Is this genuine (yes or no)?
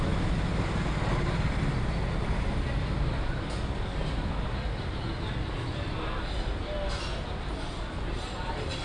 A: yes